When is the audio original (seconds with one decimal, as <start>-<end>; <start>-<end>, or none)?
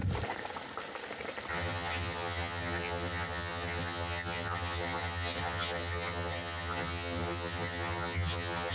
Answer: 0.0-1.5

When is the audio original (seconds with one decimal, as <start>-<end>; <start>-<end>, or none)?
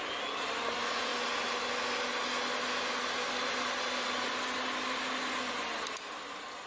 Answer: 0.0-6.7